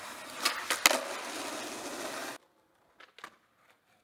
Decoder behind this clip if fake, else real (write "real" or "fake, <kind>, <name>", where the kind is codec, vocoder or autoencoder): real